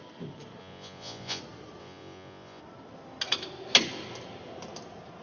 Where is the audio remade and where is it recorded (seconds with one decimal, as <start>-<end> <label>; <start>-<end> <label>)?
0.0-0.6 recorded; 0.6-1.4 remade; 1.4-1.8 recorded; 1.8-2.6 remade; 2.6-5.2 recorded